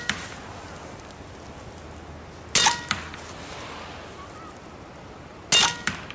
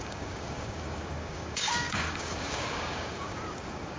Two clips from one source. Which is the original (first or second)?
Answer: first